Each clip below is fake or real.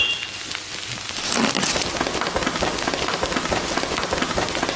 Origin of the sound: real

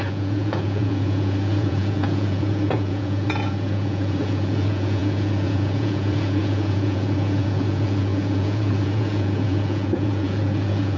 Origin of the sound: fake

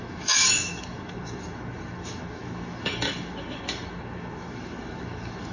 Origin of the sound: fake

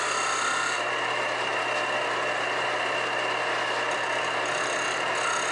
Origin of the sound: real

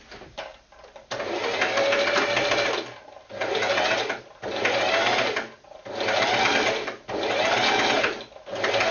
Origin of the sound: real